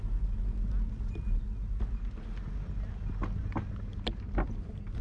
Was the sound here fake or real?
real